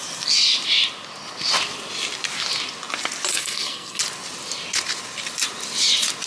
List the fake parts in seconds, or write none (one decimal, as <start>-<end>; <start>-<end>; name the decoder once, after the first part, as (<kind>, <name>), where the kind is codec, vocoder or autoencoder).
3.3-4.0 (codec, SNAC)

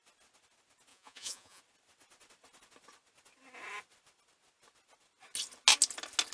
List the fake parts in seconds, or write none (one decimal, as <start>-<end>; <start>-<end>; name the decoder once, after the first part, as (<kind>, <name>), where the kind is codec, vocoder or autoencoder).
0.9-1.6 (vocoder, Vocos)

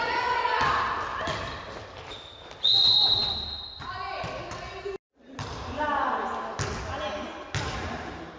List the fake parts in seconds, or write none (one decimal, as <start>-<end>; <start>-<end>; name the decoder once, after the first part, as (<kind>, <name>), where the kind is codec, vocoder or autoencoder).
none

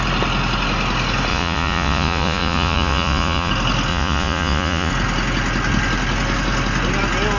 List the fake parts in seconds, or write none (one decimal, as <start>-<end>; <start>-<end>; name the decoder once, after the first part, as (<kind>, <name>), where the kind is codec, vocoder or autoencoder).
1.3-3.5 (vocoder, Vocos); 3.9-4.9

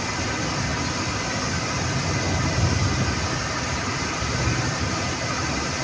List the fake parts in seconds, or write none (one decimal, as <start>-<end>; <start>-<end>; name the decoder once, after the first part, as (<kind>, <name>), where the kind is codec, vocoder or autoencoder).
none

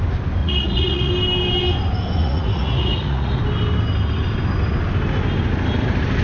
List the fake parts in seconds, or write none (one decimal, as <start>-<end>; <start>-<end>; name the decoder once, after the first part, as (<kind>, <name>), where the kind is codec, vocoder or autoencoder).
0.4-1.1 (vocoder, Vocos); 2.2-3.4